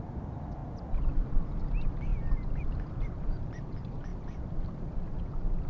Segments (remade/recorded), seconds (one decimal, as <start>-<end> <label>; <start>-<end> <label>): 0.0-5.7 recorded